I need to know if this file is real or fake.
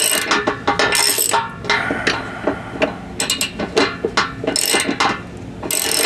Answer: real